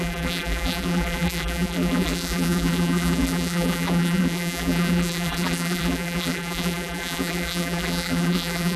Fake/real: fake